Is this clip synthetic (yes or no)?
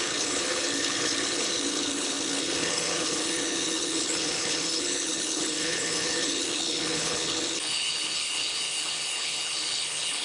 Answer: yes